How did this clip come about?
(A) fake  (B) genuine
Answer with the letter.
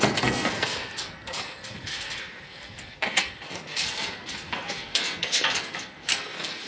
A